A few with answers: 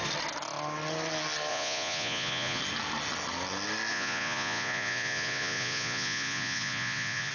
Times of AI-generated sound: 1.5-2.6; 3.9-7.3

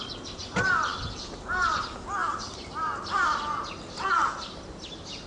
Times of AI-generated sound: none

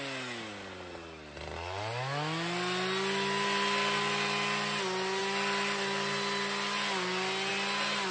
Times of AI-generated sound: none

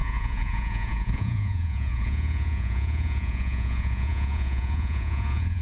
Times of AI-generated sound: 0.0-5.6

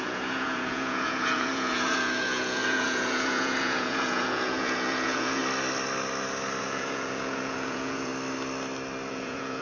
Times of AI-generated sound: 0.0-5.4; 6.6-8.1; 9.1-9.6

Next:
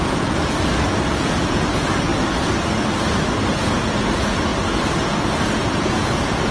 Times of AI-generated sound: 0.0-0.4; 1.1-2.1; 3.5-4.5; 5.1-6.5